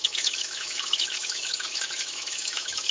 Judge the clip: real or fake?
fake